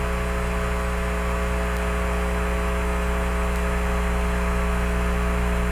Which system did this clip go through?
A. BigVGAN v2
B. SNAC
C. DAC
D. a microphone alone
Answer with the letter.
D